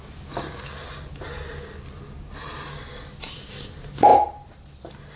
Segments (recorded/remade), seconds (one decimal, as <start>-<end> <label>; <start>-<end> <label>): 0.0-5.2 recorded